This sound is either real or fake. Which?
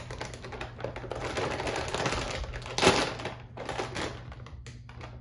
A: real